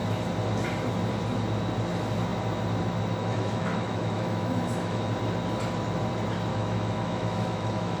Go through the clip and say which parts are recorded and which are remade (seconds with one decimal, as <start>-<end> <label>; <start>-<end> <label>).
0.0-3.2 recorded; 3.2-5.1 remade; 5.1-6.5 recorded; 6.5-8.0 remade